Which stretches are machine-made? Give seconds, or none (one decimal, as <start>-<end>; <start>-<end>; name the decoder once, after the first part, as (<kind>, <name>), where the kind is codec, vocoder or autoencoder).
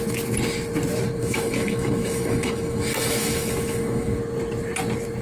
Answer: 1.2-4.2 (autoencoder, DAC-VAE)